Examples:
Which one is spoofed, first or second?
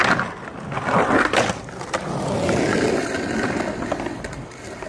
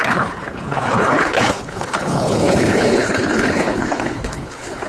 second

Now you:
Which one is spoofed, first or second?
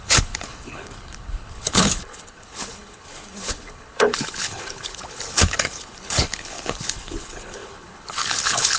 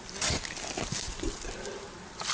first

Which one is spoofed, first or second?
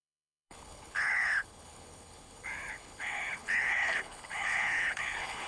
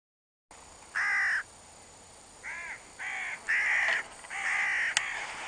first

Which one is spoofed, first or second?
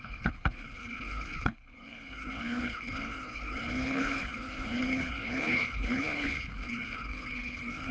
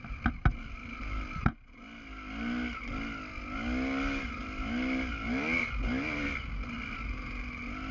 first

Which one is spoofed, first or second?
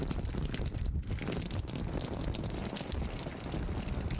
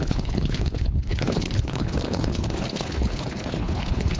second